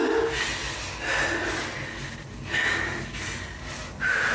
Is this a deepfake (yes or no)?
no